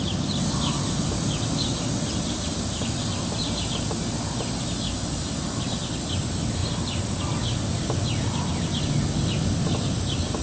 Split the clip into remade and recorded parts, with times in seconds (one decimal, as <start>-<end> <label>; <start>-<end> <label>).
0.0-10.4 recorded